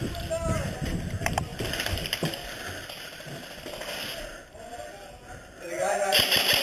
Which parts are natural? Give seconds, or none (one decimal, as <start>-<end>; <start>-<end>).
0.0-6.6